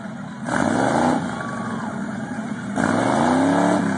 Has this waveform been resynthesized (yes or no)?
no